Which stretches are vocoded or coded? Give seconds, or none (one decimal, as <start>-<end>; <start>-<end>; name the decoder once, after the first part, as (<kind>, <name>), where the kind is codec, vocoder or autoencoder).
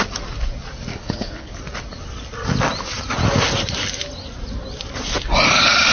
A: 0.9-1.6 (codec, HILCodec)